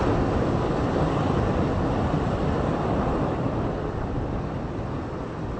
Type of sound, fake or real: real